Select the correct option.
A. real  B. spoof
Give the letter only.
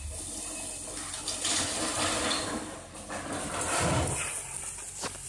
A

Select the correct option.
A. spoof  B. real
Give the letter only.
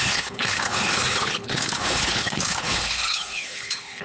A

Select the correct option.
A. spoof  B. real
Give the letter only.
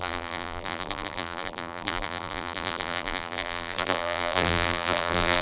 A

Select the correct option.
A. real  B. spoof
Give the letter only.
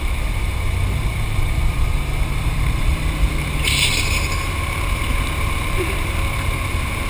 B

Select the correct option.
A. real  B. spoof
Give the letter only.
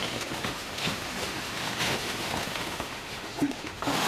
B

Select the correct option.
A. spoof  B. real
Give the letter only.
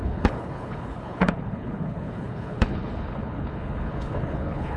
A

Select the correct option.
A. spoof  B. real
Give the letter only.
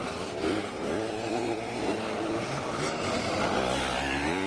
B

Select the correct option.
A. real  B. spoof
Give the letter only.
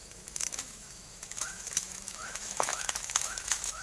B